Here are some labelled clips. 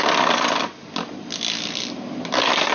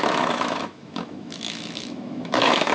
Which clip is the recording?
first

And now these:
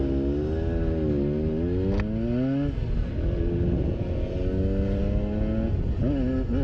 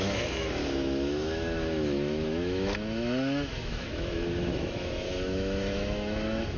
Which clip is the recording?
first